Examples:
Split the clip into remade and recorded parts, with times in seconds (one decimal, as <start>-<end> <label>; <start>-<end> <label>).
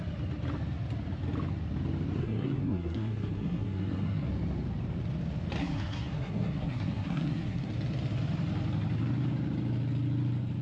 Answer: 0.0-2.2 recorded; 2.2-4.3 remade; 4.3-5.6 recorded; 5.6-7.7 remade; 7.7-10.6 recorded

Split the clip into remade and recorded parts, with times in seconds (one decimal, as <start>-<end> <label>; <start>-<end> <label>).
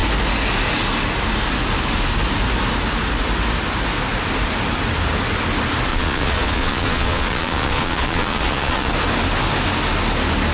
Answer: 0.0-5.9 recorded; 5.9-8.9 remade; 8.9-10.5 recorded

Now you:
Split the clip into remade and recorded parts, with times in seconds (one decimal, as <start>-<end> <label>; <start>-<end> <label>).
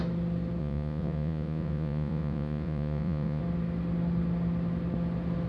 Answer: 0.0-0.6 recorded; 0.6-3.4 remade; 3.4-5.5 recorded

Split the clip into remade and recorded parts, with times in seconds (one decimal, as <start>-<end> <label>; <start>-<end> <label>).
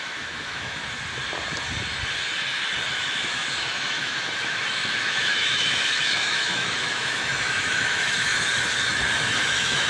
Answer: 0.0-0.8 remade; 0.8-2.9 recorded; 2.9-8.3 remade; 8.3-9.4 recorded; 9.4-9.9 remade